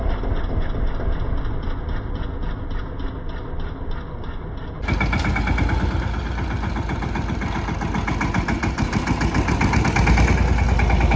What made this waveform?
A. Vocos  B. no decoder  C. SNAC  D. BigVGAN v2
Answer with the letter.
B